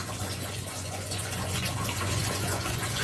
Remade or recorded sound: remade